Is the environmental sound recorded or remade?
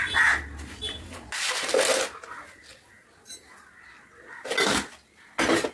recorded